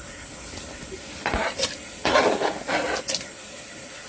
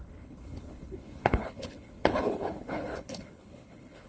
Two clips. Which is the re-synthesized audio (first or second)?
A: second